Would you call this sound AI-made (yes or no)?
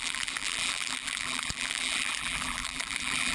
yes